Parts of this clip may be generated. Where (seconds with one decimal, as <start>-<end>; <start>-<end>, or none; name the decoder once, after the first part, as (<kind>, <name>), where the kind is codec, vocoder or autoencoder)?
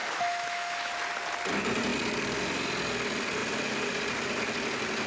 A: 0.0-0.9 (autoencoder, DAC-VAE)